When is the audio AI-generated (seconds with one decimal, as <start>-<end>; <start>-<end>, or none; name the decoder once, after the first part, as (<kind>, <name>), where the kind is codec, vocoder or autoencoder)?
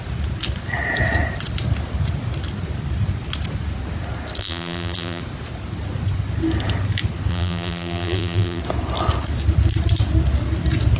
4.4-5.2 (vocoder, BigVGAN v2); 7.3-8.6